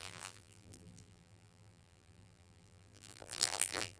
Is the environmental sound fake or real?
fake